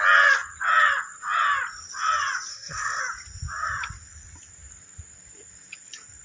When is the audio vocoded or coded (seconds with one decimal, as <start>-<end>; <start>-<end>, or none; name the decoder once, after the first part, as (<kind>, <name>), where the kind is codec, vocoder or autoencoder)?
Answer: 2.5-3.0 (codec, SNAC)